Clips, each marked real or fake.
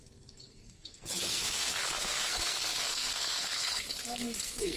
fake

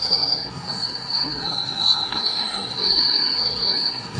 fake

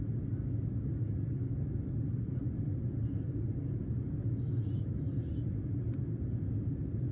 real